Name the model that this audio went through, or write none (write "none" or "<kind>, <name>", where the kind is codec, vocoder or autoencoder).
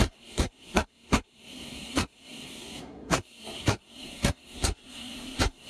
codec, SNAC